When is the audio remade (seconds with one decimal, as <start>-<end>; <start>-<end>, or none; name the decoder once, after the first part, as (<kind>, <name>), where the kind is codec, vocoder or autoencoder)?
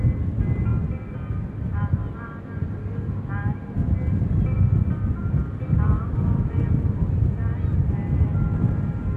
none